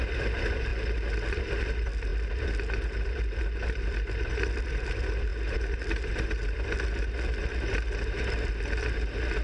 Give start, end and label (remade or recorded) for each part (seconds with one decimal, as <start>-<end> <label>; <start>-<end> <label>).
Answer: 0.0-9.4 recorded